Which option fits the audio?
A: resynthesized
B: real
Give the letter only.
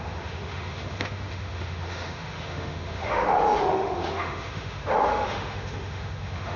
A